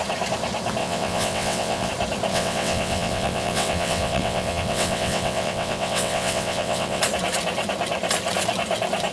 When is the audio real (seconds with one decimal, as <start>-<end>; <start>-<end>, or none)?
0.0-0.8; 1.9-2.3; 7.0-9.1